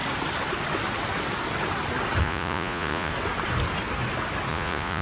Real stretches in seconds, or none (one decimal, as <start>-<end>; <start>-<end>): 0.0-2.2; 3.1-4.5